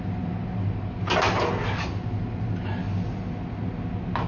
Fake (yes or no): no